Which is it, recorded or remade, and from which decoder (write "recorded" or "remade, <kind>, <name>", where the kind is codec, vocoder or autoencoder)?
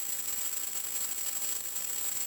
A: recorded